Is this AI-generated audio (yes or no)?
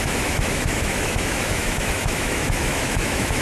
yes